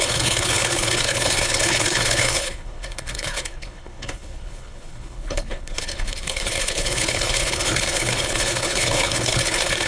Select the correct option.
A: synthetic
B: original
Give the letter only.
A